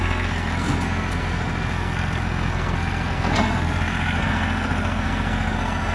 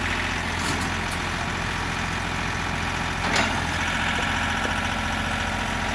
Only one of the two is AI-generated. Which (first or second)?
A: first